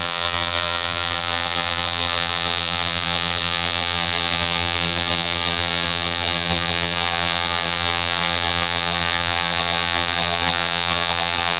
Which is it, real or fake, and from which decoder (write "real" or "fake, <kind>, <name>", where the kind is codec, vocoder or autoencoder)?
fake, vocoder, BigVGAN v2